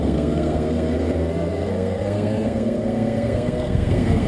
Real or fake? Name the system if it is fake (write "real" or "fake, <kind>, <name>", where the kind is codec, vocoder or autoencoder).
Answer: fake, codec, SNAC